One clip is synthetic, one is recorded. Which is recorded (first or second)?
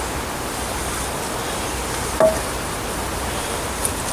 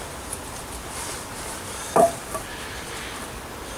first